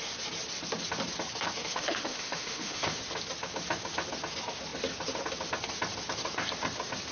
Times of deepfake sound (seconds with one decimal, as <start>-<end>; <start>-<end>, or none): 1.6-3.0